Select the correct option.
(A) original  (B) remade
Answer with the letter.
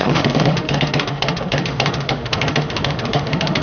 B